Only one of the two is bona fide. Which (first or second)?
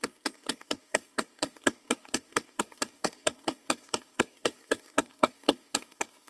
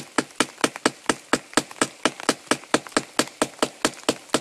second